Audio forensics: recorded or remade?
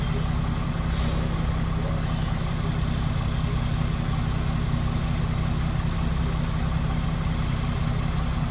recorded